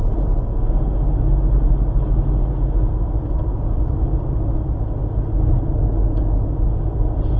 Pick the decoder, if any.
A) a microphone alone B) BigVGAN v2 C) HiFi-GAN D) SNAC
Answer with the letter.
A